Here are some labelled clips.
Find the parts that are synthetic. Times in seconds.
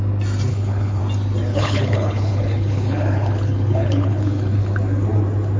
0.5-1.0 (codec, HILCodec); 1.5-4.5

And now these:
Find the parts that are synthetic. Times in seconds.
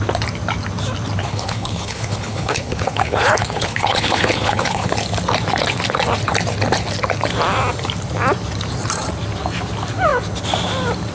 1.2-4.9 (codec, HILCodec)